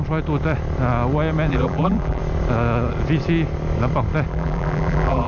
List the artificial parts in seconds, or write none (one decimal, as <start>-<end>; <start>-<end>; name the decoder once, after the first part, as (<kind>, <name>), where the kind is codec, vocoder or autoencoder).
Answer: 1.5-2.2 (vocoder, BigVGAN v2); 4.3-5.3